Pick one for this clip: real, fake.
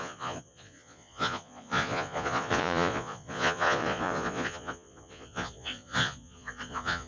fake